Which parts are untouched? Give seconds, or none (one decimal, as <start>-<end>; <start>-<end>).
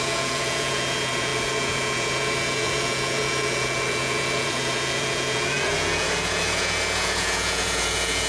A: none